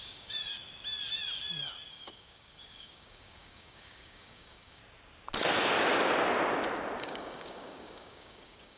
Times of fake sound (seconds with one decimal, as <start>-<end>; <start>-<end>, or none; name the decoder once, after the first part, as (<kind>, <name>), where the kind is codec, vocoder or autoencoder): 0.0-0.5 (codec, DAC); 1.9-4.8; 7.0-8.8